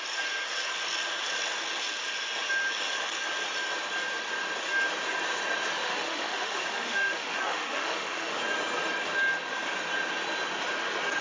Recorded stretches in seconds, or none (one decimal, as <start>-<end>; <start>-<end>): 0.0-5.8; 8.4-11.2